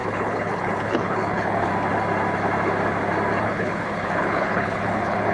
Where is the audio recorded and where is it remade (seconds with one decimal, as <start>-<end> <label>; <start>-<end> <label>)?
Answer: 0.0-1.7 remade; 1.7-3.4 recorded; 3.4-5.3 remade